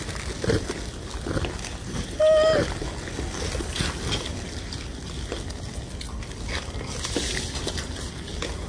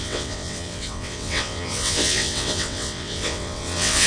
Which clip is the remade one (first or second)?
second